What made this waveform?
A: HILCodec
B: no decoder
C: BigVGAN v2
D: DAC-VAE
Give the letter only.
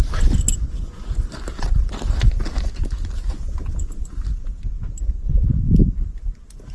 B